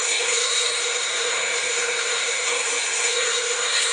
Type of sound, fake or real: fake